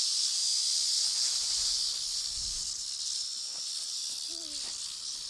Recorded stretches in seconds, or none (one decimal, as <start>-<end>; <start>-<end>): 0.0-5.3